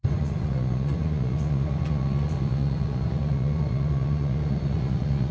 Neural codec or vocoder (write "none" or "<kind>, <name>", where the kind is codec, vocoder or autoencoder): vocoder, Vocos